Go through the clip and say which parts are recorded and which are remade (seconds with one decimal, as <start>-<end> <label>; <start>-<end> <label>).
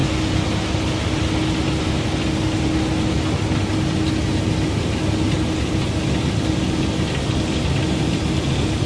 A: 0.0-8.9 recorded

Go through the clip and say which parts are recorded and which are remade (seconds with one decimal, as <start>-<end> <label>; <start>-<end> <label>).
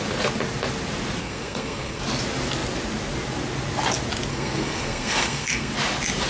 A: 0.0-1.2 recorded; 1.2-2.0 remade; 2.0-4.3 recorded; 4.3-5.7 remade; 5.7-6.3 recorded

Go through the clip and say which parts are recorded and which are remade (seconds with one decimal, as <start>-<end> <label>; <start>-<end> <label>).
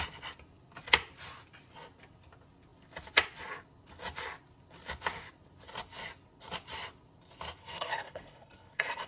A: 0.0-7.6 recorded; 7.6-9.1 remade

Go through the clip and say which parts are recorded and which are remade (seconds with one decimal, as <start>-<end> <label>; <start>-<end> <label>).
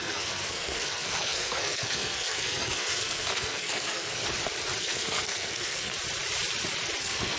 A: 0.0-4.2 remade; 4.2-4.8 recorded; 4.8-5.9 remade; 5.9-7.0 recorded; 7.0-7.4 remade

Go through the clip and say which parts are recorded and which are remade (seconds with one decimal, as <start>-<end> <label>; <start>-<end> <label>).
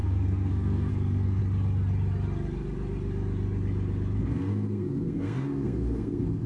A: 0.0-1.4 remade; 1.4-4.2 recorded; 4.2-6.5 remade